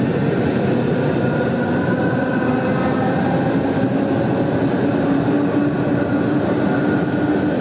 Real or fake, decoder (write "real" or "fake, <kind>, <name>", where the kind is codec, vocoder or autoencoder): real